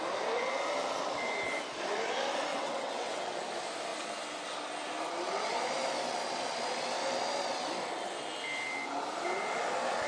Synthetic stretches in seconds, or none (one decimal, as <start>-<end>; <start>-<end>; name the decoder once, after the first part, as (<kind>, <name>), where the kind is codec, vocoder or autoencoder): 2.5-3.3 (vocoder, WaveNeXt)